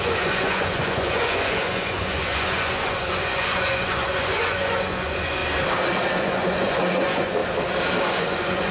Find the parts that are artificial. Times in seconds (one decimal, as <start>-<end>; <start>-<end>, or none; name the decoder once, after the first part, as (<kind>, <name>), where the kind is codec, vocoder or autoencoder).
0.0-5.4 (vocoder, Vocos); 6.2-7.4; 8.1-8.7